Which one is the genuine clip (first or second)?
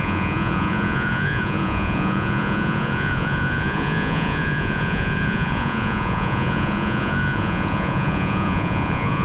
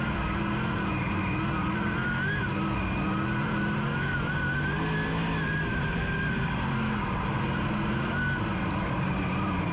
second